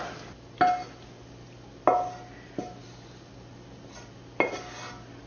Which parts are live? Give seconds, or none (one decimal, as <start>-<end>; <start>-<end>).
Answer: 0.0-5.3